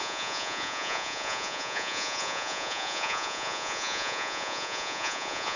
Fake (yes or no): yes